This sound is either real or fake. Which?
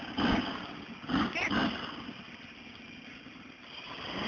real